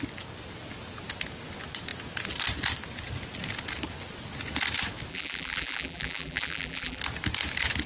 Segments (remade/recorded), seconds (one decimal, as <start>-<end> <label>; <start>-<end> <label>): 0.0-5.1 recorded; 5.1-7.0 remade; 7.0-7.9 recorded

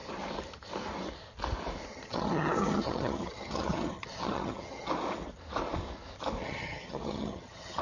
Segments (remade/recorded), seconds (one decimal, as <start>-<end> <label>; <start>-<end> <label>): 0.0-1.9 recorded; 1.9-4.9 remade; 4.9-6.4 recorded; 6.4-7.8 remade

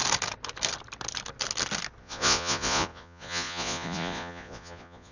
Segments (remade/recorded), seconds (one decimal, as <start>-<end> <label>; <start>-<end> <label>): 0.0-2.0 recorded; 2.0-5.1 remade

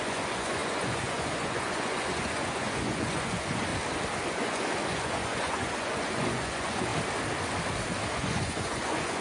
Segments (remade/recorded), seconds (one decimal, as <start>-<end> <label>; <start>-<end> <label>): 0.0-3.7 remade; 3.7-4.3 recorded; 4.3-6.9 remade; 6.9-8.1 recorded; 8.1-9.2 remade